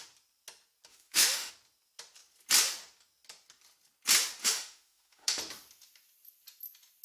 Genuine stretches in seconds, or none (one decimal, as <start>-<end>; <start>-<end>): 0.0-0.9; 1.5-4.4; 5.4-7.0